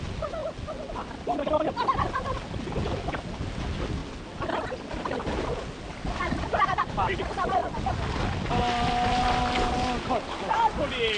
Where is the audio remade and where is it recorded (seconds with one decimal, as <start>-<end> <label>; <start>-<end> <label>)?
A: 0.0-11.2 recorded